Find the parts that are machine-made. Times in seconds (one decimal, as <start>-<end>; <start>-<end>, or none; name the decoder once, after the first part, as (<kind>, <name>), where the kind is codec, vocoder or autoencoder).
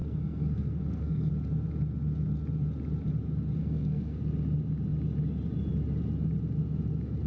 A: 0.0-1.3 (codec, SNAC); 3.6-4.2